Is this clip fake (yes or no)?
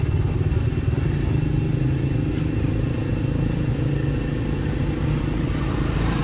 no